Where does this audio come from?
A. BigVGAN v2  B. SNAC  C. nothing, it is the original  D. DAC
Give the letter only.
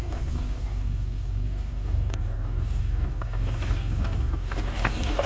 D